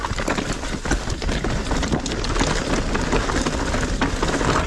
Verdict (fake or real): real